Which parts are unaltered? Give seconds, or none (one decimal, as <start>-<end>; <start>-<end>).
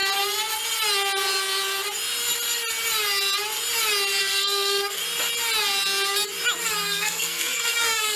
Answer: 0.0-4.2; 5.0-6.8